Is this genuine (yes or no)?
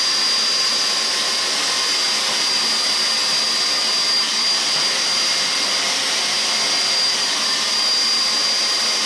yes